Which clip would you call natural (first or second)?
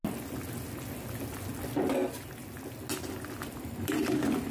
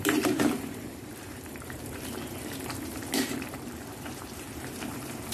first